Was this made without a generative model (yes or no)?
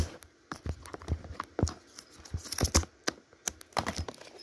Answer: yes